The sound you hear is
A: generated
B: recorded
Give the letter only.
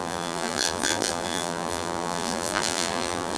A